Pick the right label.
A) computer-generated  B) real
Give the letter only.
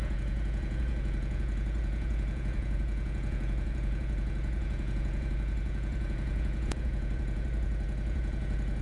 A